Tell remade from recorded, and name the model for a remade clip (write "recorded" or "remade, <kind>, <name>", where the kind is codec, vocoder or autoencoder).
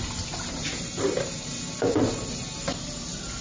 recorded